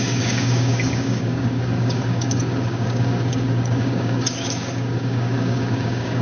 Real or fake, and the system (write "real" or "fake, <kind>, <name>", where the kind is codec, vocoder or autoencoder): fake, codec, DAC